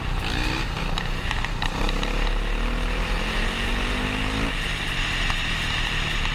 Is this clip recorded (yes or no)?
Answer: yes